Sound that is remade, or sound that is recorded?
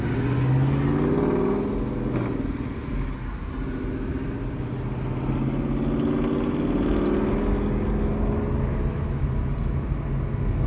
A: recorded